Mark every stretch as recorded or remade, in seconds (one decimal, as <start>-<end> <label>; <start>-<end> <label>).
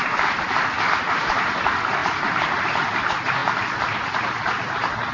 0.0-5.1 recorded